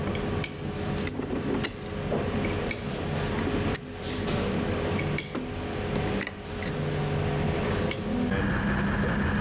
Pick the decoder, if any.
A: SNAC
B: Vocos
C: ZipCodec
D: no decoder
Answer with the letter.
D